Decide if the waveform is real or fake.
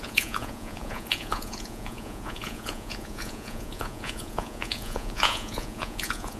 fake